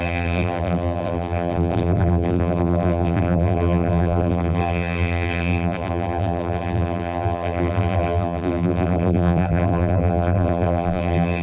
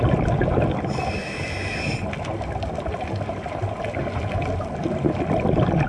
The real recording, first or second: second